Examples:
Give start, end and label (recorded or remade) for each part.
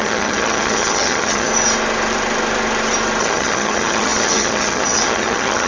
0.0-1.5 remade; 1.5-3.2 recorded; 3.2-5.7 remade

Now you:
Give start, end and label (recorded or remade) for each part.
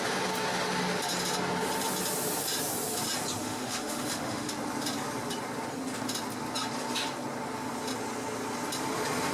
0.0-3.4 recorded; 3.4-4.5 remade; 4.5-9.3 recorded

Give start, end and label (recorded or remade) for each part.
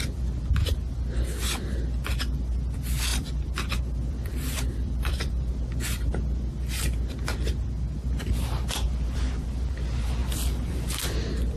0.0-3.1 recorded; 3.1-5.5 remade; 5.5-10.2 recorded; 10.2-10.8 remade; 10.8-11.6 recorded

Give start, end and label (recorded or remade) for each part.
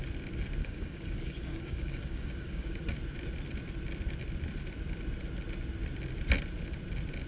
0.0-0.6 recorded; 0.6-2.8 remade; 2.8-7.3 recorded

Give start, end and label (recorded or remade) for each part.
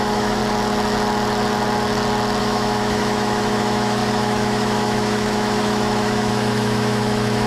0.0-0.4 remade; 0.4-2.4 recorded; 2.4-7.5 remade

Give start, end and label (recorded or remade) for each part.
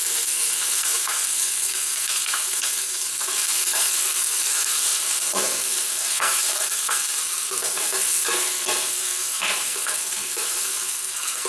0.0-11.5 remade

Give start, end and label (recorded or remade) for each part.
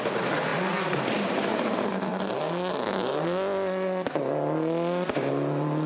0.0-5.9 recorded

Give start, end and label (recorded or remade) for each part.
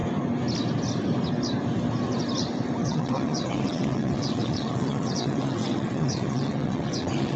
0.0-2.8 recorded; 2.8-7.4 remade